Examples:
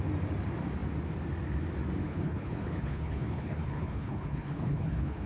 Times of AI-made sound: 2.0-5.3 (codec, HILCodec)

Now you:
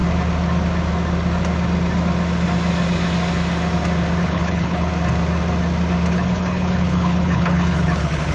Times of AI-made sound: 4.2-4.9 (codec, HILCodec); 6.1-8.3